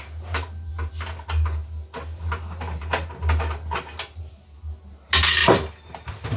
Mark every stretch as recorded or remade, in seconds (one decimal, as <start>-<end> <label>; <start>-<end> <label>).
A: 0.0-6.4 recorded

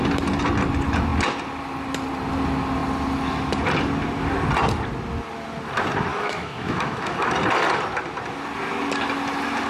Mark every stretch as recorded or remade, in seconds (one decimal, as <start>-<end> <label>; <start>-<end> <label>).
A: 0.0-6.1 recorded; 6.1-7.3 remade; 7.3-9.7 recorded

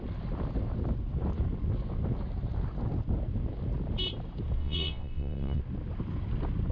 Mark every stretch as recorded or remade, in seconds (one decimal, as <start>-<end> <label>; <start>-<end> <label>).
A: 0.0-4.6 recorded; 4.6-5.6 remade; 5.6-6.7 recorded

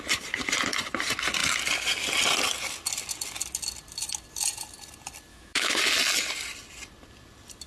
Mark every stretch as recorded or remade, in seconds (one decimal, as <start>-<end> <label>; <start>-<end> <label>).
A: 0.0-5.3 recorded; 5.3-5.8 remade; 5.8-7.7 recorded

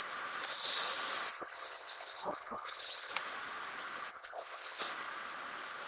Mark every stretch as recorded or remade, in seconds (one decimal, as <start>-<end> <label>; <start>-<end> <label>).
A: 0.0-1.3 recorded; 1.3-3.1 remade; 3.1-4.1 recorded; 4.1-4.8 remade; 4.8-5.9 recorded

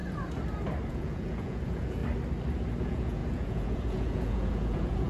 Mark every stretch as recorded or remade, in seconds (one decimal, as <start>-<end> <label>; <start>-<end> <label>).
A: 0.0-0.9 recorded; 0.9-2.0 remade; 2.0-2.8 recorded; 2.8-5.1 remade

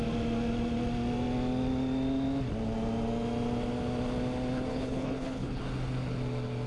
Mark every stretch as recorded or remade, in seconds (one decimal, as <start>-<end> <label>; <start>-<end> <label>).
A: 0.0-4.7 recorded; 4.7-5.6 remade; 5.6-6.7 recorded